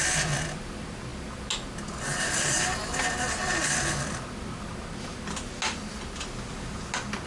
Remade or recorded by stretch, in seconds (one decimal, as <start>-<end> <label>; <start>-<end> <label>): 0.0-7.3 recorded